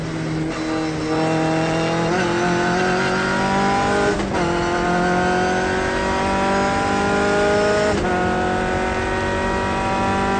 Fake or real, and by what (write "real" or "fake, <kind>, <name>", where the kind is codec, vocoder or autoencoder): real